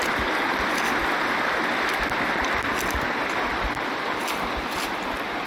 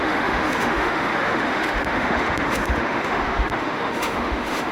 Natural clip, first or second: first